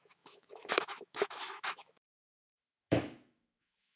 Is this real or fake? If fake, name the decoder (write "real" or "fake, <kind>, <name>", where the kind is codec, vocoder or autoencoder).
fake, autoencoder, DAC-VAE